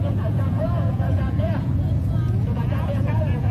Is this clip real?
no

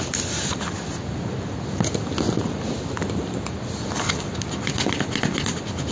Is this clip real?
yes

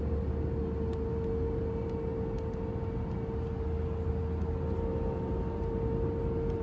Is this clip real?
yes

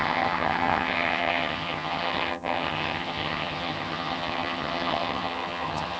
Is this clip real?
no